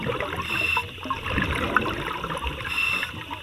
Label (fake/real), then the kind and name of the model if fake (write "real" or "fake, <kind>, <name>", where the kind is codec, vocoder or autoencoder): real